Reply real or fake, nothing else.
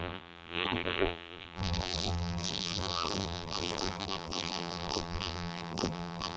fake